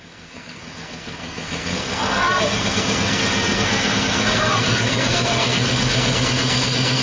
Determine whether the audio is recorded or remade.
remade